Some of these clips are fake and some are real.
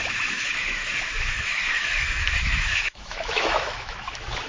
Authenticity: fake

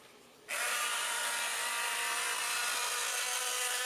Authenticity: real